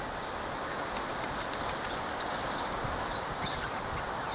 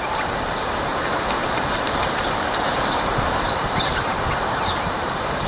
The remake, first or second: second